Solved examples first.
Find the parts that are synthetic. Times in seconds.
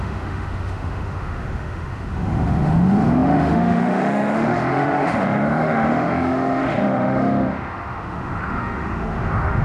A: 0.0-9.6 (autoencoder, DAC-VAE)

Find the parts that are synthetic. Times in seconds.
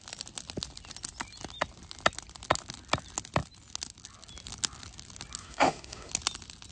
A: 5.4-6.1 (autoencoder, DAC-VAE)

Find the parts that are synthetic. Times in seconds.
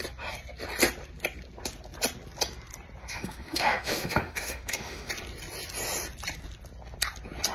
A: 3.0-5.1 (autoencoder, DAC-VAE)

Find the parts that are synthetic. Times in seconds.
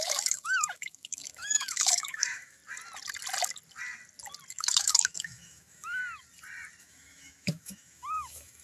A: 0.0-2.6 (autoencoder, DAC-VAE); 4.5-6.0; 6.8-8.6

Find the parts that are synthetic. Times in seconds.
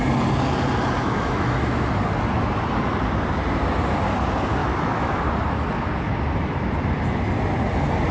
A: 1.0-1.9 (autoencoder, DAC-VAE); 4.6-5.2